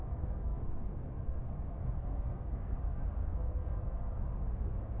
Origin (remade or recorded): remade